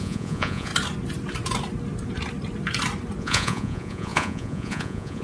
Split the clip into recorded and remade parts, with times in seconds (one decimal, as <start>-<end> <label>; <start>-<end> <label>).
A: 0.0-0.7 remade; 0.7-3.2 recorded; 3.2-5.2 remade